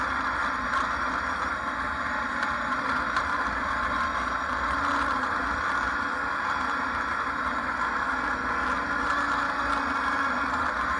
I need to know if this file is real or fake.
real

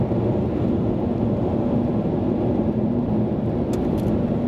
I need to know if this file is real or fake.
real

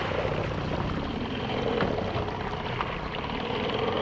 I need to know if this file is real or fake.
real